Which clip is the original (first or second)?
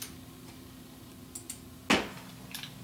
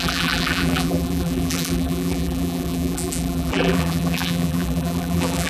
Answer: first